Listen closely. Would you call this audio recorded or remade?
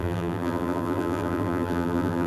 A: remade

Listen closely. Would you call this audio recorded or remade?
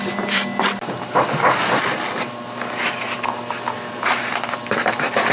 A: recorded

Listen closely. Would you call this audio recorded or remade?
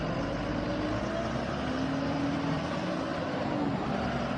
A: recorded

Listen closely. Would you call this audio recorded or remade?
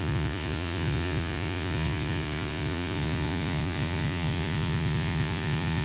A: remade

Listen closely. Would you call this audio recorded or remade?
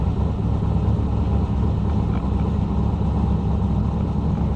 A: recorded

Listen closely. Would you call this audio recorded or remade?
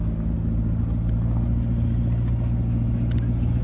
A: recorded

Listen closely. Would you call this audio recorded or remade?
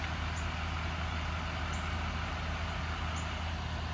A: recorded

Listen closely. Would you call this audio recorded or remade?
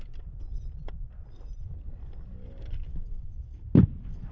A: recorded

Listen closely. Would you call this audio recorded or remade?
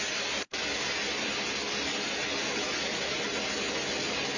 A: recorded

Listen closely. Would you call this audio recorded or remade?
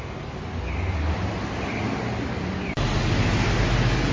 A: recorded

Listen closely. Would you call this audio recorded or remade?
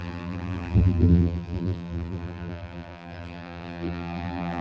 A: remade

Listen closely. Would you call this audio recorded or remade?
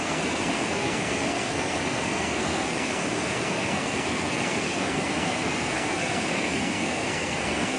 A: remade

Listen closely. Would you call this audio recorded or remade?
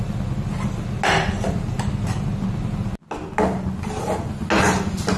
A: recorded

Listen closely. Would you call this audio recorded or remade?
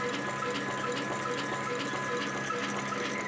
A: recorded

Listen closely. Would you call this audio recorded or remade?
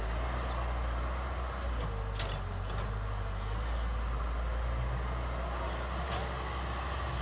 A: recorded